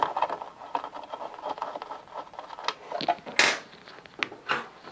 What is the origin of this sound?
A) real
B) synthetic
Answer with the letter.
A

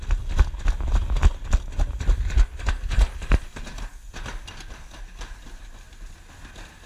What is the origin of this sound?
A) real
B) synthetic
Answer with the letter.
A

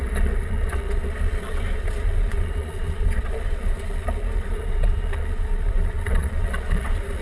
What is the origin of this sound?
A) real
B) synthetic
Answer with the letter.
B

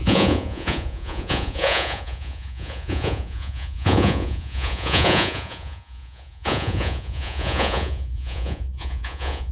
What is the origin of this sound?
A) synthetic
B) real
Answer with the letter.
A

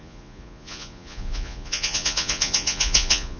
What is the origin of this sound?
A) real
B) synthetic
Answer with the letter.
B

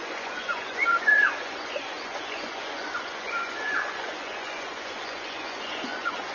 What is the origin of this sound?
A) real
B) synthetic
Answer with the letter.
B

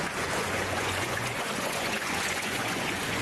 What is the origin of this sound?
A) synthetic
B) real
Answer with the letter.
A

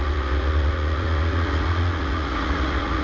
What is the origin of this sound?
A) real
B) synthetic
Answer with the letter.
B